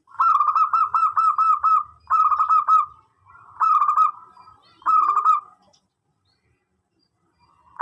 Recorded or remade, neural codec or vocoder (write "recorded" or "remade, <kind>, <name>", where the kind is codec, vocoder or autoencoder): recorded